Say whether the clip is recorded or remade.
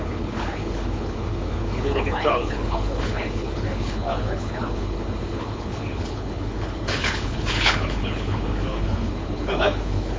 remade